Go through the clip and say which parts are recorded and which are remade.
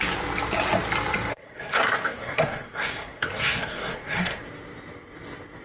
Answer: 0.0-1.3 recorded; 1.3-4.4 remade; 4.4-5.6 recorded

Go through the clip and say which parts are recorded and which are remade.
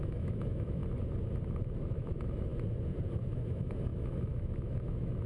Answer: 0.0-0.8 remade; 0.8-1.8 recorded; 1.8-2.5 remade; 2.5-3.1 recorded; 3.1-5.3 remade